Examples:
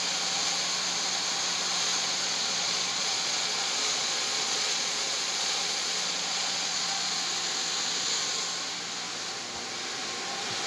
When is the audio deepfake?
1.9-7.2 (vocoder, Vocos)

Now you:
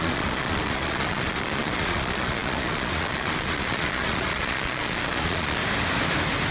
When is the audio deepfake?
0.0-5.6 (vocoder, Vocos)

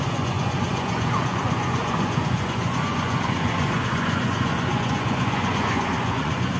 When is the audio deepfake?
0.0-6.6 (vocoder, Vocos)